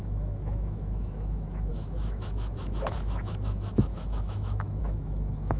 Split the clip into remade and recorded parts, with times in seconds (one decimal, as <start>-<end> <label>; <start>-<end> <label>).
0.0-5.6 remade